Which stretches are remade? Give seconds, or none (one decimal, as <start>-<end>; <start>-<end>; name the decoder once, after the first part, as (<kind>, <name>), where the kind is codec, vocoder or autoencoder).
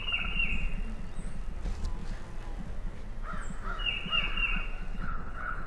4.9-5.7 (codec, HILCodec)